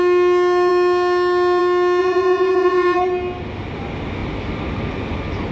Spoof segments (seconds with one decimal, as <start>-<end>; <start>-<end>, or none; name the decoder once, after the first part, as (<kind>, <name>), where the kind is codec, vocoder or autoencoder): 2.0-3.1 (vocoder, Vocos)

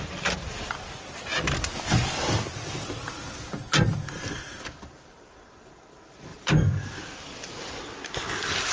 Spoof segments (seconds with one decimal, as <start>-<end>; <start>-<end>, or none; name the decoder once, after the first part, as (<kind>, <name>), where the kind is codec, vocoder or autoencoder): 6.3-7.8 (vocoder, BigVGAN v2)